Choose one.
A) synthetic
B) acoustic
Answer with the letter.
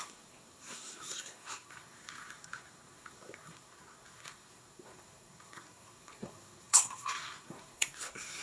A